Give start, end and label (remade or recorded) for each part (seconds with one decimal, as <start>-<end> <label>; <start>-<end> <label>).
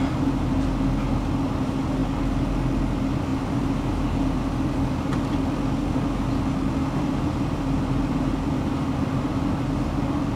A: 0.0-10.4 recorded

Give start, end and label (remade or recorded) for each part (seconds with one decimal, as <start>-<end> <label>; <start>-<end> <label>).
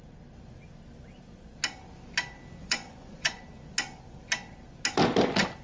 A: 0.0-2.6 recorded; 2.6-3.4 remade; 3.4-5.6 recorded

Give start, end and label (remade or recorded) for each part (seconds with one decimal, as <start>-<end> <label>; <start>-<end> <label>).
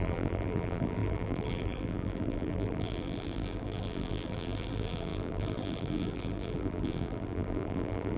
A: 0.0-8.2 remade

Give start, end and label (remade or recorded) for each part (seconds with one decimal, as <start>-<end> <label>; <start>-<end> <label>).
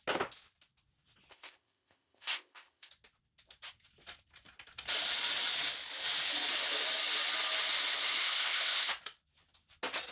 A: 0.0-1.3 recorded; 1.3-2.9 remade; 2.9-8.2 recorded; 8.2-8.9 remade; 8.9-10.1 recorded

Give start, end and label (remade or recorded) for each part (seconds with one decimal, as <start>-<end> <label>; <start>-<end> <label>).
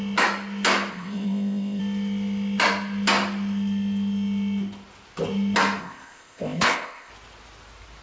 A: 0.0-0.9 recorded; 0.9-1.8 remade; 1.8-5.8 recorded; 5.8-7.1 remade; 7.1-8.0 recorded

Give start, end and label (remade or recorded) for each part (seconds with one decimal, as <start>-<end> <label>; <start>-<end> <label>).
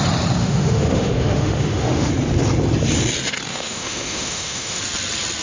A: 0.0-0.4 recorded; 0.4-2.1 remade; 2.1-3.5 recorded; 3.5-4.8 remade; 4.8-5.4 recorded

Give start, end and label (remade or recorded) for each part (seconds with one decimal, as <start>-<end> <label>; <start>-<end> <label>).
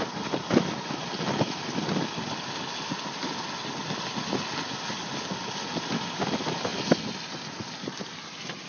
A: 0.0-8.7 recorded